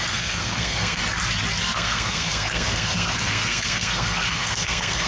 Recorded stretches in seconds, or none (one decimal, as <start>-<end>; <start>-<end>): 1.0-1.6